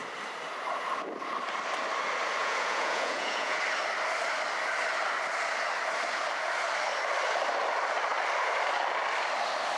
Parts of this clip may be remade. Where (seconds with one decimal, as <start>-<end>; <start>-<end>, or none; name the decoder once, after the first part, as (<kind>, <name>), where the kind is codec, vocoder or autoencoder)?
2.4-3.6 (vocoder, Vocos)